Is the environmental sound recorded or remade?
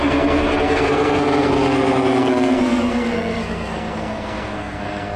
remade